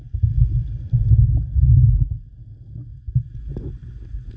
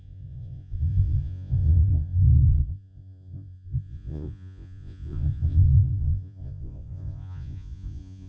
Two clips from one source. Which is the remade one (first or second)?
second